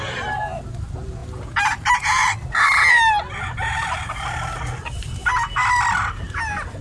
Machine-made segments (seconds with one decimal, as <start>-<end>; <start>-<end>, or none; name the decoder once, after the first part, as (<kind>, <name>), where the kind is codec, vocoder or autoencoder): none